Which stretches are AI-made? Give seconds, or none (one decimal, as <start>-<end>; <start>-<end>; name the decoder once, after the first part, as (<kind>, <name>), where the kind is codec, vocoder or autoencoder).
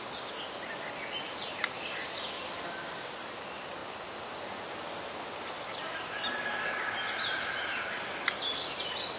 none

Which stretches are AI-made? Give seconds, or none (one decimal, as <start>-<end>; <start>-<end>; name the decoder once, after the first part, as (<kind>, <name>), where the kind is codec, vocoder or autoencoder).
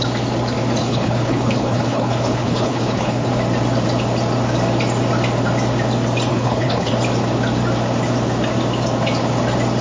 0.8-3.3 (codec, HILCodec); 6.3-6.9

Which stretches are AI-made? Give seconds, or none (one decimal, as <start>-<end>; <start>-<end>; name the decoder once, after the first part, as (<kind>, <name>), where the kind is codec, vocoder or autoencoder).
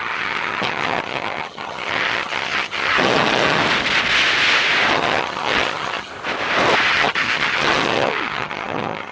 0.0-3.6 (vocoder, HiFi-GAN); 4.9-6.1; 6.9-9.1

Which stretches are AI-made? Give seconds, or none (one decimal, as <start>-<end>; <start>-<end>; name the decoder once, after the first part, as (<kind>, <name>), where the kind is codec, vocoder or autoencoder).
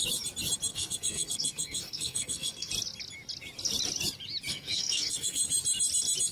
0.7-2.7 (codec, SNAC); 4.5-5.4